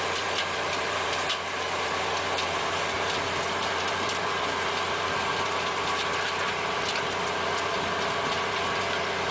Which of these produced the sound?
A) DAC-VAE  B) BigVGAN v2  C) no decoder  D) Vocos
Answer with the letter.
B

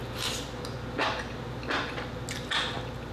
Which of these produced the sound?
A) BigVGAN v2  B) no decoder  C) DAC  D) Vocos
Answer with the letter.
B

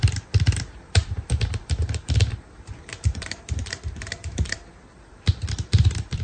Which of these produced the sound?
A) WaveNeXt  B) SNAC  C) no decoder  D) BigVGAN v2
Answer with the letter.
D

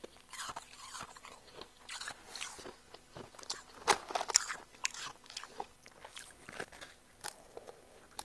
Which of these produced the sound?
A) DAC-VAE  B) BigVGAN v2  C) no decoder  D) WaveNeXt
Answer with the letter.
C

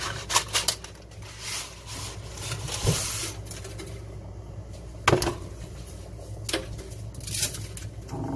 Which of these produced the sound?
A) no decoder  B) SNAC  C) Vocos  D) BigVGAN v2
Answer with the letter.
A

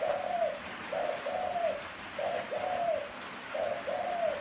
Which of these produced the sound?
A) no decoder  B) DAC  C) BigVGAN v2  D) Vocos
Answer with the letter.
A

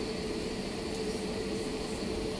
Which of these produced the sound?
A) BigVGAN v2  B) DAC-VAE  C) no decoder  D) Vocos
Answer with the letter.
A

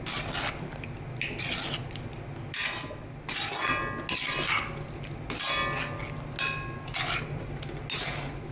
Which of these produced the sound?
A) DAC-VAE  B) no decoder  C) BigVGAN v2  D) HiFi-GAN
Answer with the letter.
B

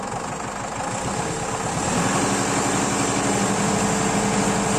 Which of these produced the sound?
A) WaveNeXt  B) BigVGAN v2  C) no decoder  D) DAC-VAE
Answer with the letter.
C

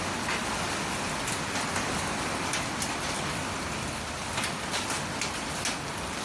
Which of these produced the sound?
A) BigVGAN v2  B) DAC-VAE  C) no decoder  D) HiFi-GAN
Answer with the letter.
C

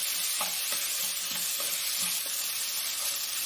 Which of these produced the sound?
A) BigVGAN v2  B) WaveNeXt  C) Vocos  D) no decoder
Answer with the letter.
D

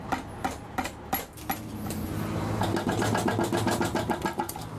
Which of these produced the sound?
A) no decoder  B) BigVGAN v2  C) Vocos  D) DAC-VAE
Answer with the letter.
A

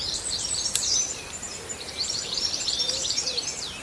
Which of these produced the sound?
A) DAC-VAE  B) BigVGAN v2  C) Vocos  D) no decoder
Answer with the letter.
B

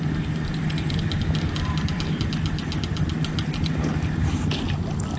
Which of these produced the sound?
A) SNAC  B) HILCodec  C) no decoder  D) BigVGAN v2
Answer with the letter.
C